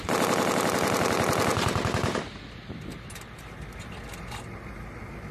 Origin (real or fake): real